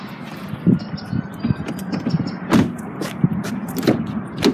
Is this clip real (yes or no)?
yes